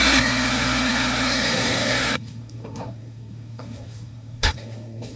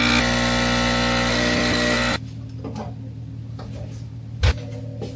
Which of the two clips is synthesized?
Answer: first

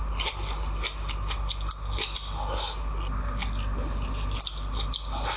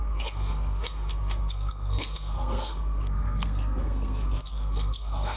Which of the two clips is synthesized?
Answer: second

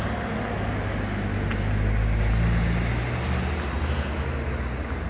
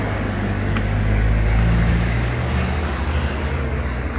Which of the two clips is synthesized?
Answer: second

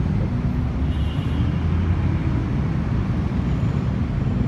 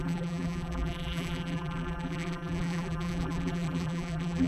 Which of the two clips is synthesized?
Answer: second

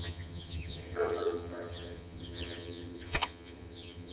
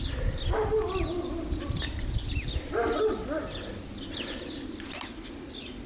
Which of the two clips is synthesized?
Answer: first